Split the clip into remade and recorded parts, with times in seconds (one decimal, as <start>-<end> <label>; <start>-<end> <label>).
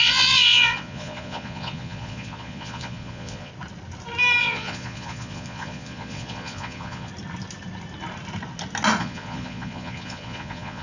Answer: 0.0-3.5 remade; 3.5-4.4 recorded; 4.4-7.1 remade; 7.1-9.0 recorded; 9.0-10.8 remade